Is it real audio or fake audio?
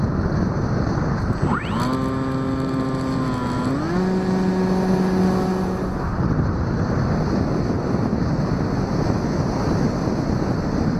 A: real